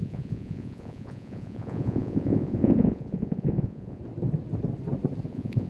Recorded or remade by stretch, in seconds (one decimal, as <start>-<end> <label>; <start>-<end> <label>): 0.0-4.0 remade; 4.0-5.3 recorded; 5.3-5.7 remade